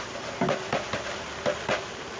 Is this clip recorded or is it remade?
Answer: recorded